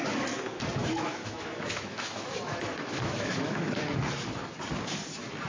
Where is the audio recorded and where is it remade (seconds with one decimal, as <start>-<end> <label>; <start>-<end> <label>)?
0.0-0.8 recorded; 0.8-4.0 remade; 4.0-5.5 recorded